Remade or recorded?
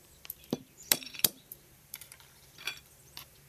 remade